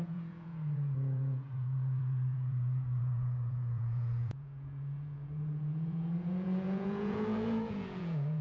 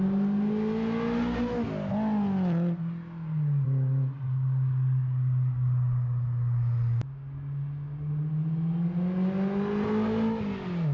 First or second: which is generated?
first